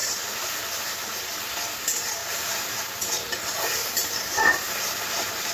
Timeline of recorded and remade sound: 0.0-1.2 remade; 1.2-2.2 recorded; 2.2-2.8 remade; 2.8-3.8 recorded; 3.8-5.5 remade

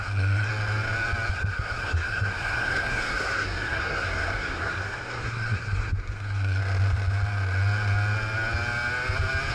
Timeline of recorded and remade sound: 0.0-0.5 remade; 0.5-1.3 recorded; 1.3-6.6 remade; 6.6-9.5 recorded